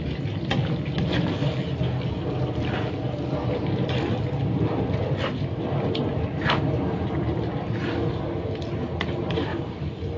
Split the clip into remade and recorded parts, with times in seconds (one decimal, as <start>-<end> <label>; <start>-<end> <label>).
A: 0.0-10.2 recorded

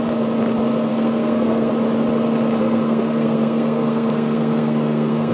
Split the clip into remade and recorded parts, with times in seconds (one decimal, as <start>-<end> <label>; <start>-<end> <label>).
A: 0.0-0.9 recorded; 0.9-1.7 remade; 1.7-2.6 recorded; 2.6-5.3 remade

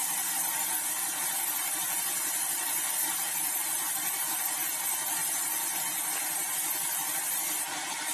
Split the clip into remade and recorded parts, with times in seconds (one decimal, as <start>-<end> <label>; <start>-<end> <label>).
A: 0.0-8.1 recorded

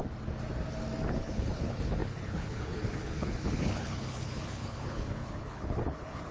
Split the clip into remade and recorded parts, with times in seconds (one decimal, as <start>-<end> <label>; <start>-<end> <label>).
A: 0.0-1.1 recorded; 1.1-6.3 remade

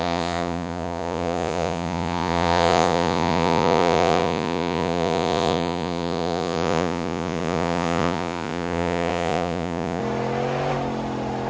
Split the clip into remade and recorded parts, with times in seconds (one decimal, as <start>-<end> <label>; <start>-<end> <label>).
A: 0.0-10.0 remade; 10.0-11.5 recorded